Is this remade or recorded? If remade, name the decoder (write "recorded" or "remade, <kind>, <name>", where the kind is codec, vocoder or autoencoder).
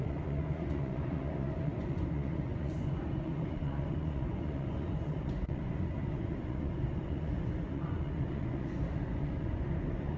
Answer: remade, vocoder, Vocos